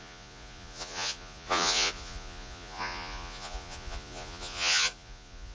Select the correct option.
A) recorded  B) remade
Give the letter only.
B